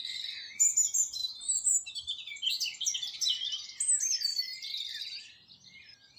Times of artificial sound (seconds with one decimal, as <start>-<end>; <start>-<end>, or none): 1.2-2.5; 4.3-5.0